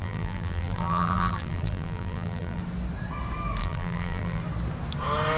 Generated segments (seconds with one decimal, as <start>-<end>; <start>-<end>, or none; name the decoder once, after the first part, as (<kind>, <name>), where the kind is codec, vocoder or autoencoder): 0.0-2.6 (vocoder, BigVGAN v2); 3.6-4.4